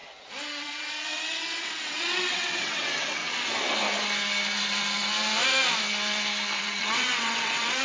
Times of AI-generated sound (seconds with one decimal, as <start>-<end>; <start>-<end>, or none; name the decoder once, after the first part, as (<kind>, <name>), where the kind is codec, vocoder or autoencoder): 0.6-3.2 (vocoder, WaveNeXt); 6.6-7.8